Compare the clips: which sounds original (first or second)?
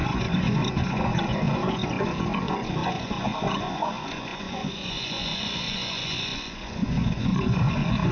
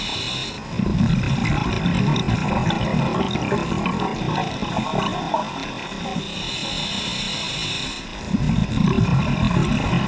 second